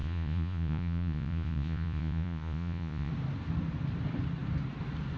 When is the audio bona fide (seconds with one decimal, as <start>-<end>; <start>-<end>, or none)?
3.1-5.2